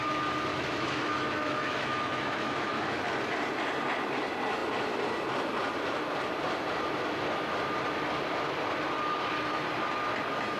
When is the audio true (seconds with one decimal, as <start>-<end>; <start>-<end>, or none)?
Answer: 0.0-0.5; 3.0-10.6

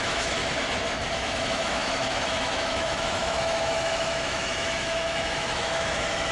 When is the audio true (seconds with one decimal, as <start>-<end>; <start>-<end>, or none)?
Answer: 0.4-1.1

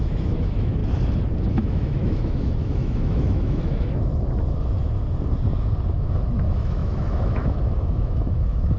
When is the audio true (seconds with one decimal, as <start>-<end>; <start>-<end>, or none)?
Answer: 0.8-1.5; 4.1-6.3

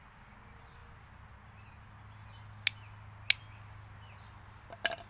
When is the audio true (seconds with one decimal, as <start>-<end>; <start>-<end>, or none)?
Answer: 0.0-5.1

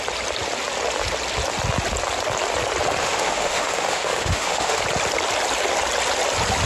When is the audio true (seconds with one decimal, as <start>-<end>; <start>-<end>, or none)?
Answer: 0.0-3.0; 4.8-6.7